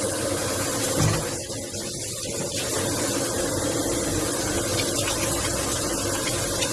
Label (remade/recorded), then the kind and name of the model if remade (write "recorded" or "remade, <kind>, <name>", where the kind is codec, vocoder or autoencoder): recorded